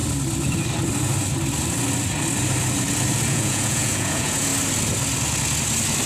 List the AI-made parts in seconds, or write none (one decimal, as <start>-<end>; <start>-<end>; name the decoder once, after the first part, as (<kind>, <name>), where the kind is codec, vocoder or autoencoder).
3.3-4.5 (vocoder, Vocos)

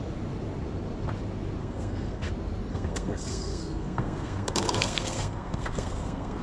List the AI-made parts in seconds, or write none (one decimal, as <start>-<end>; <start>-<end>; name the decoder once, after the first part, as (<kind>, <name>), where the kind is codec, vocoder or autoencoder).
1.6-2.3 (codec, SNAC); 2.7-6.4

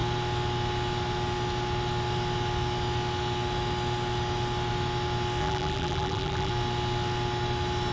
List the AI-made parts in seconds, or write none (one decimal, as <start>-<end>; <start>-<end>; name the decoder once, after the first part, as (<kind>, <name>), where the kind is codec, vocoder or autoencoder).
5.4-6.5 (vocoder, BigVGAN v2)

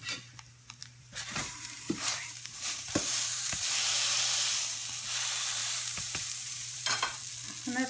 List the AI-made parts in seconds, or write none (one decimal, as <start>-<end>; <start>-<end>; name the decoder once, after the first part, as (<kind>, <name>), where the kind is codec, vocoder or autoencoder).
0.8-4.3 (vocoder, BigVGAN v2); 5.6-7.2

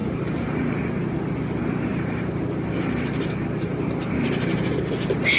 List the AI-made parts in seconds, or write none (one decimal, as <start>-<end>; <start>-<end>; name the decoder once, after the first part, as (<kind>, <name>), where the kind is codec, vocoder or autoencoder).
0.0-0.7 (vocoder, BigVGAN v2); 1.9-4.8